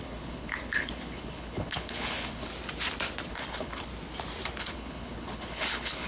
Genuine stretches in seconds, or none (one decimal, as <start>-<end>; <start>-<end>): 2.5-3.3; 3.9-4.6

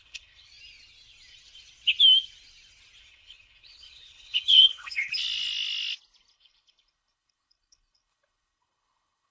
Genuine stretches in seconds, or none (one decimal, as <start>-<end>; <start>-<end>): 0.5-3.0; 5.1-6.3

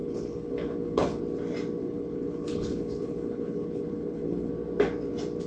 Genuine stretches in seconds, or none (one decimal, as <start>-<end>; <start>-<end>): 1.2-1.8; 4.5-5.5

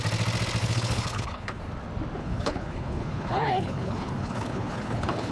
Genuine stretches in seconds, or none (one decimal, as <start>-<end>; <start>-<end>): 0.0-0.6; 1.6-2.2